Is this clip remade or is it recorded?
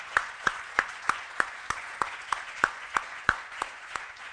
remade